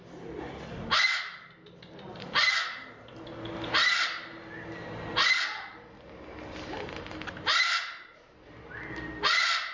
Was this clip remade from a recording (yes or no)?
no